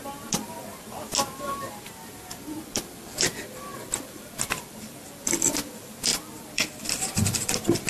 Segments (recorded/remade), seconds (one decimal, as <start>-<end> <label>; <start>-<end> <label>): 0.0-2.6 recorded; 2.6-7.9 remade